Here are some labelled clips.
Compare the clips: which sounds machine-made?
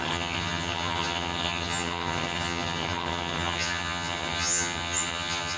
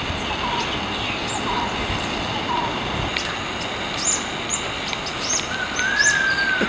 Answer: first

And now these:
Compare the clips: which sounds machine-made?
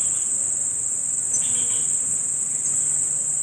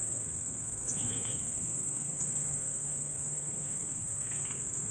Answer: second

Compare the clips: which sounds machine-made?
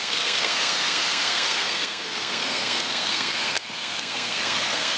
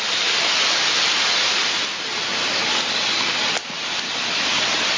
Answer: first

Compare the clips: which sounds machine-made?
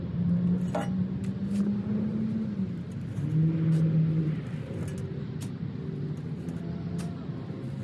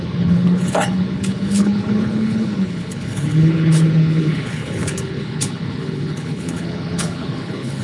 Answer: second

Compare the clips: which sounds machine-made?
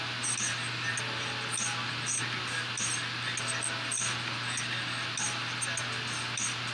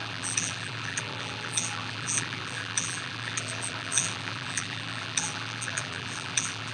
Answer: second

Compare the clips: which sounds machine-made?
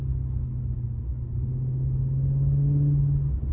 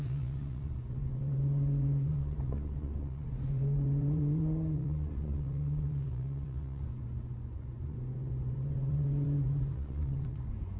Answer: second